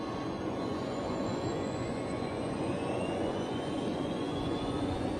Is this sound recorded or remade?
remade